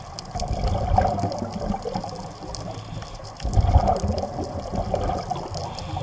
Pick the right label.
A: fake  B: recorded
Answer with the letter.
B